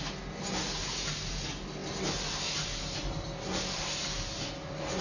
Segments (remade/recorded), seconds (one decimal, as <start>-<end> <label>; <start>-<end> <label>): 0.0-5.0 recorded